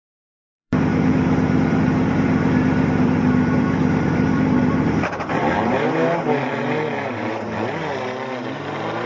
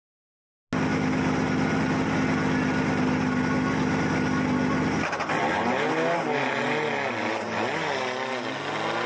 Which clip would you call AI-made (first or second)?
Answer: first